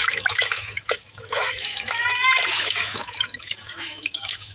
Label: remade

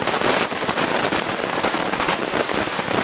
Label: remade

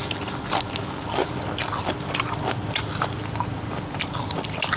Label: recorded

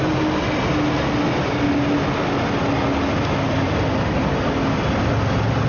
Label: recorded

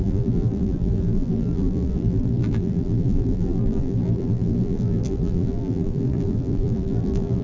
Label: remade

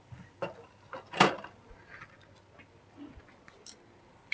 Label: recorded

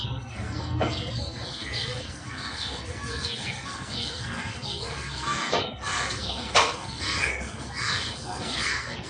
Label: remade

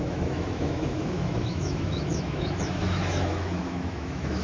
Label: remade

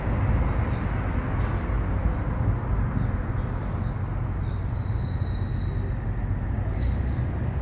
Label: recorded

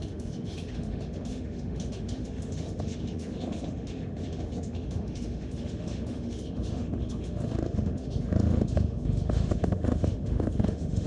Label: remade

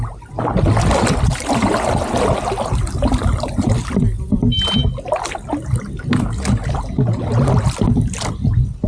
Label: recorded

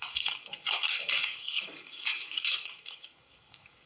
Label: remade